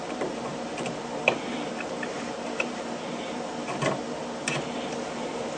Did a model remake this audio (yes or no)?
yes